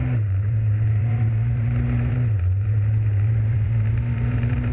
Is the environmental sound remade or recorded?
remade